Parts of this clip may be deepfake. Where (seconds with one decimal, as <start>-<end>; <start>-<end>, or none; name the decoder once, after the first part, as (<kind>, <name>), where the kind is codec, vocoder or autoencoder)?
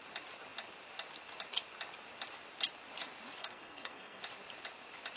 3.4-4.2 (codec, SNAC)